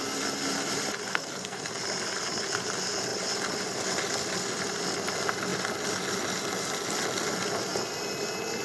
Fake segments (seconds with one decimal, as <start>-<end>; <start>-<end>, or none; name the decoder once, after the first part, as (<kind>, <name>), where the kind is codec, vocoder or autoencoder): 1.1-1.7 (codec, SNAC)